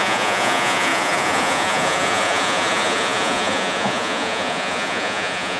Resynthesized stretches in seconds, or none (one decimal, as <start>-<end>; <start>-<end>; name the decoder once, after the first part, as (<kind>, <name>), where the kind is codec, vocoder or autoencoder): 0.0-5.6 (vocoder, Vocos)